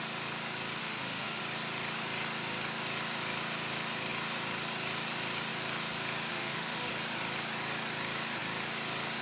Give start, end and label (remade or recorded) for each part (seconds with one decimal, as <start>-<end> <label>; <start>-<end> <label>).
0.0-0.8 recorded; 0.8-1.4 remade; 1.4-6.3 recorded; 6.3-6.9 remade; 6.9-9.2 recorded